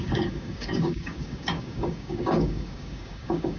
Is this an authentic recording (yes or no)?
no